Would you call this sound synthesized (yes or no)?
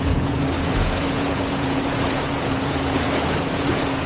yes